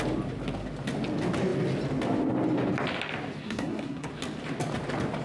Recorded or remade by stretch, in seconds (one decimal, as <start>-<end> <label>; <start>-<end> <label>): 0.0-3.4 recorded; 3.4-4.1 remade; 4.1-5.2 recorded